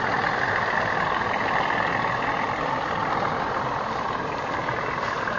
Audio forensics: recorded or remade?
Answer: remade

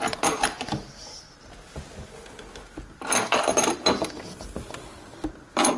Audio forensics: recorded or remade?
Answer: recorded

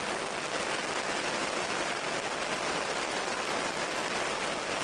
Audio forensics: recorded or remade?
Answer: recorded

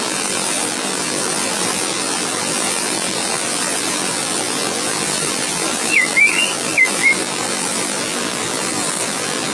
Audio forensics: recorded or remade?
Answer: remade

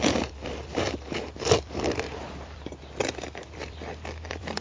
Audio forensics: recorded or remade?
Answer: remade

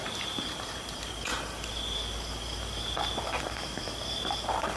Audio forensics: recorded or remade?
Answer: remade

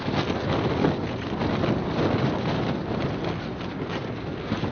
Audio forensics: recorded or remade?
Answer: recorded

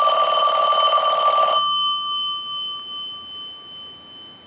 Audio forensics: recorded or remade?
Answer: recorded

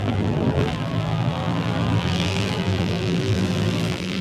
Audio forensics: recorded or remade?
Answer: remade